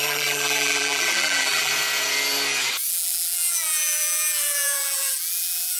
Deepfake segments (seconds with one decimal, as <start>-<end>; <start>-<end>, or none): 0.0-1.7; 2.9-5.8